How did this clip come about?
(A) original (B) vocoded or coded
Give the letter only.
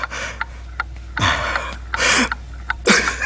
A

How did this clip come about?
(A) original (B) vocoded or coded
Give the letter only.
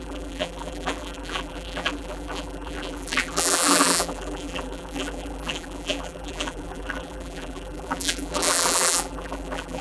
B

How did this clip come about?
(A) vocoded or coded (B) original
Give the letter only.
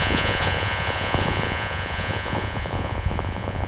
A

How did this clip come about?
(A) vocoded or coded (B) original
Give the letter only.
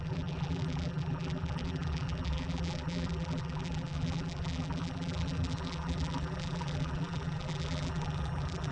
A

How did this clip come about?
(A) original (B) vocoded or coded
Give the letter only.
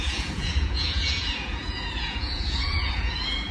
B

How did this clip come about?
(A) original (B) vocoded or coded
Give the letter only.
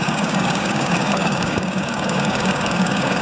B